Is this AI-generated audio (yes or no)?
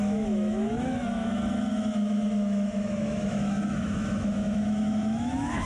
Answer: yes